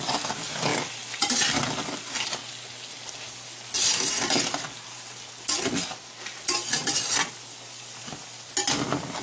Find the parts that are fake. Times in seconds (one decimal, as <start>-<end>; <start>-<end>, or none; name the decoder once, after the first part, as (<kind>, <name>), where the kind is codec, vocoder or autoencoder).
none